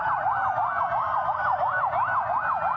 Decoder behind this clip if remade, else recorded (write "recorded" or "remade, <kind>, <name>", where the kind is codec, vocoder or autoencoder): recorded